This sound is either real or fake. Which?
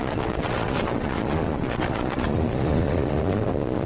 fake